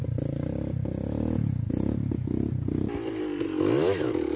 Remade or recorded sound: recorded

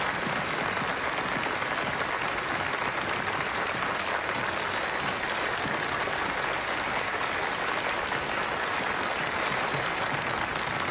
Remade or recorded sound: recorded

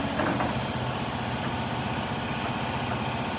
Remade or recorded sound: recorded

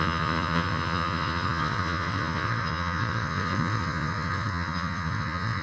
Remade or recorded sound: remade